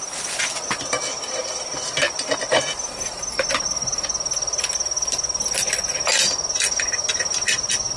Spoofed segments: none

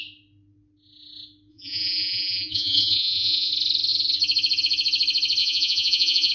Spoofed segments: 1.5-3.5; 5.4-6.3

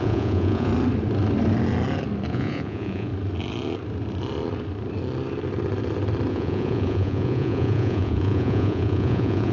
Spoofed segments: 0.0-0.7; 2.3-3.1; 6.3-9.5

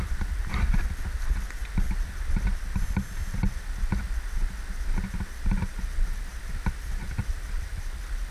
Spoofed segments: none

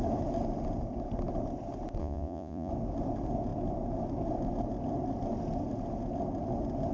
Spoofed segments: 2.0-2.7

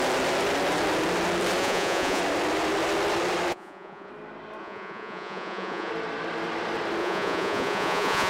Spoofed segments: 1.6-2.2; 3.5-4.1; 4.6-5.9; 7.0-8.3

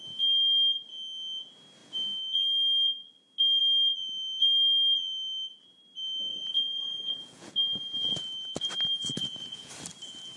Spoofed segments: 6.3-7.5; 9.2-9.7